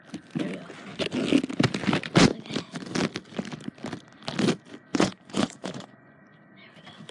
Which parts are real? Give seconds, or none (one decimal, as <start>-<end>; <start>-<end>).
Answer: 0.0-4.9; 6.2-7.1